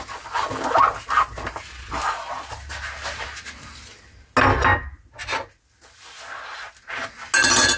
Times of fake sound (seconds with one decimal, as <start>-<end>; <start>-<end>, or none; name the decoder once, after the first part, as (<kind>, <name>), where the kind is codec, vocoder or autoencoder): none